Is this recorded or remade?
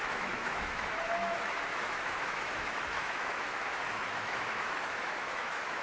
remade